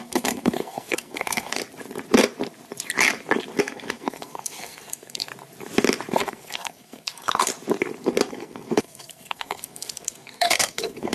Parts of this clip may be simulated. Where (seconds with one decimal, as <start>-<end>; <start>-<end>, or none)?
0.0-1.6; 3.6-5.3; 6.1-7.5; 8.3-11.1